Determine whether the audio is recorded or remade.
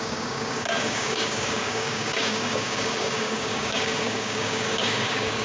remade